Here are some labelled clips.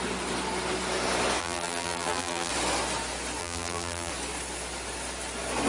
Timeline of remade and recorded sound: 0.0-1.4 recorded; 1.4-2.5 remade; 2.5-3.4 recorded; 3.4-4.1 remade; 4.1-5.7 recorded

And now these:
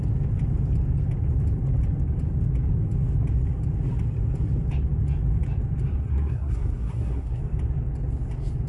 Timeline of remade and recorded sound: 0.0-6.0 recorded; 6.0-7.4 remade; 7.4-8.7 recorded